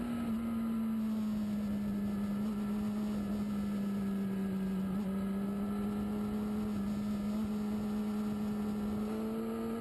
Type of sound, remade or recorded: recorded